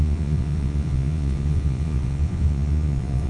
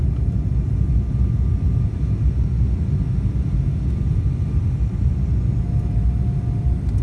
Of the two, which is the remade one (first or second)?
first